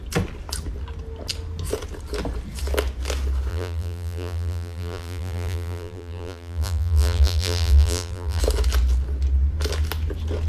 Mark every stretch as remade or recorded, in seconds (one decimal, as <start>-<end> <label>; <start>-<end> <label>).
0.0-3.5 recorded; 3.5-8.4 remade; 8.4-10.5 recorded